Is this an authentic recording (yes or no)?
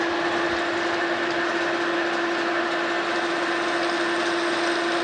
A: yes